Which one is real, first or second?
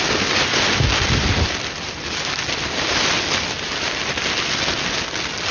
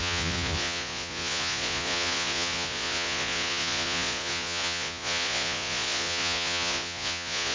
first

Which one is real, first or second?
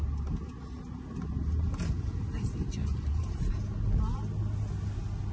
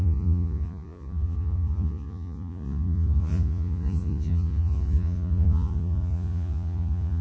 first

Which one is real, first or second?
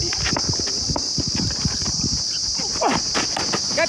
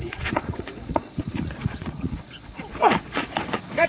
first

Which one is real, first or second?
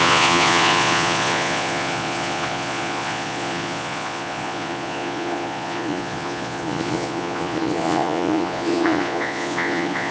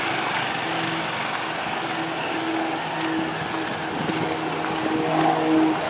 second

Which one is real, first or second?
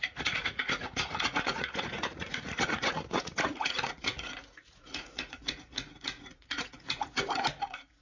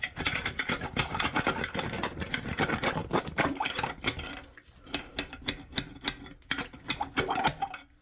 second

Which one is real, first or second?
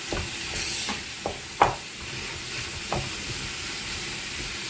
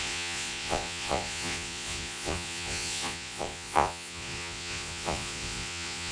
first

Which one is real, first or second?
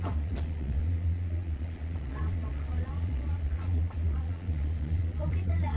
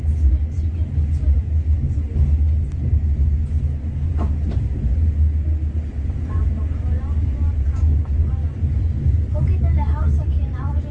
second